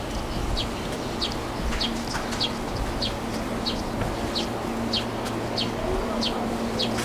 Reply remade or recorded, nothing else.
recorded